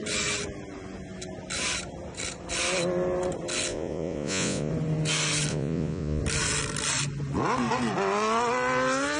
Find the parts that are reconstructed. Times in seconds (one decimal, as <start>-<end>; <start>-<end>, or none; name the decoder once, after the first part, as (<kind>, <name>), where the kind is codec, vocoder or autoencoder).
3.7-4.7 (vocoder, Vocos); 5.5-6.2